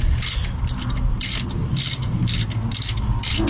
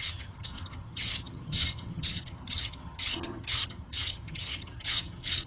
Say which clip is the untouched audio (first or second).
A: first